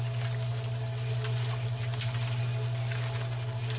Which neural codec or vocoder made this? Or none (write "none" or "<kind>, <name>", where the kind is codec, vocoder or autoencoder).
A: none